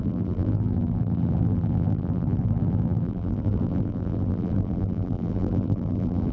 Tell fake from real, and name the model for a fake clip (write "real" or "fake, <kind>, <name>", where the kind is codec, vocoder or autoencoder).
fake, vocoder, BigVGAN v2